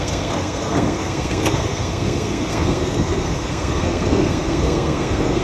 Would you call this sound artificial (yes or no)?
yes